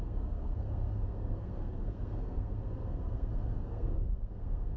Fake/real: fake